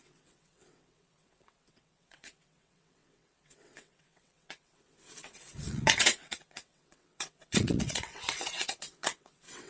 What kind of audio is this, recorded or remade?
remade